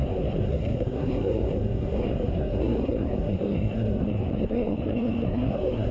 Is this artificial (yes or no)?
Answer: yes